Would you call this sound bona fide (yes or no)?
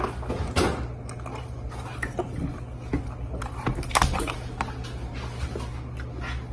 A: yes